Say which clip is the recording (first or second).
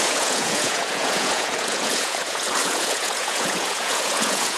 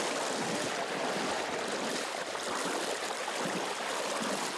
second